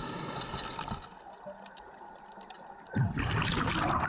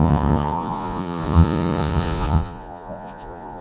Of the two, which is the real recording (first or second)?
first